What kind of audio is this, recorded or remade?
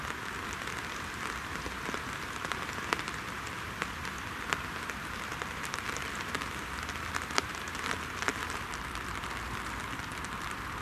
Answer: remade